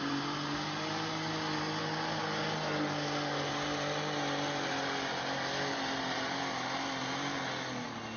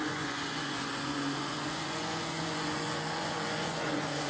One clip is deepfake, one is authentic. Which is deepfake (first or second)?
second